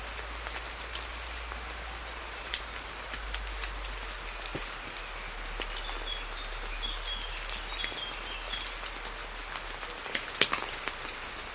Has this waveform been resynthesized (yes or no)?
no